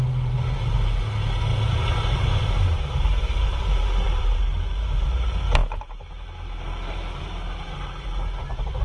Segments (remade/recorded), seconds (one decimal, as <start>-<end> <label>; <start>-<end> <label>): 0.0-1.5 recorded; 1.5-4.4 remade; 4.4-8.8 recorded

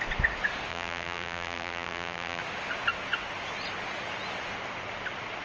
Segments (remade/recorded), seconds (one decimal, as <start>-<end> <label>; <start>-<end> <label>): 0.0-0.7 recorded; 0.7-2.4 remade; 2.4-5.4 recorded

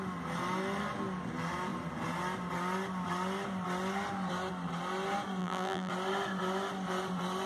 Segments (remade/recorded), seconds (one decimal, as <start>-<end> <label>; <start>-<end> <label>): 0.0-5.4 recorded; 5.4-5.9 remade; 5.9-7.5 recorded

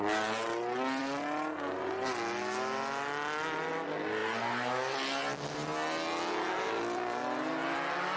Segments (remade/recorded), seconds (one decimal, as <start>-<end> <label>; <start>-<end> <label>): 0.0-8.2 recorded

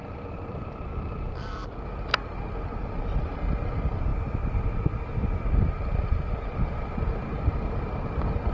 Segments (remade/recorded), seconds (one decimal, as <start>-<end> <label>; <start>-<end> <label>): 0.0-4.1 recorded; 4.1-7.0 remade; 7.0-8.5 recorded

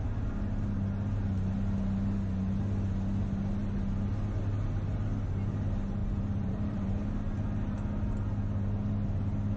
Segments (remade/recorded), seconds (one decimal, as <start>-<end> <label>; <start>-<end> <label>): 0.0-6.0 recorded; 6.0-7.0 remade; 7.0-9.6 recorded

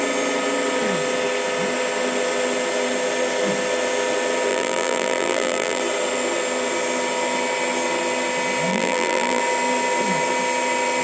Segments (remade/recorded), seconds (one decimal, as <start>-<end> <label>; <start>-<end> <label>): 0.0-4.5 recorded; 4.5-5.8 remade; 5.8-8.7 recorded; 8.7-9.4 remade; 9.4-11.0 recorded

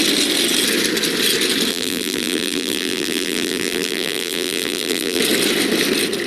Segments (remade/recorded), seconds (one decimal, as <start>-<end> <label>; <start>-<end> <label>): 0.0-1.7 recorded; 1.7-5.2 remade; 5.2-6.3 recorded